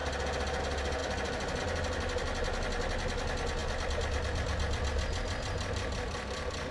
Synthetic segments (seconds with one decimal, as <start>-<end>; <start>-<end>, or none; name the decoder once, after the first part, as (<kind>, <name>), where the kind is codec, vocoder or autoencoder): 1.0-1.6 (vocoder, BigVGAN v2); 3.6-6.7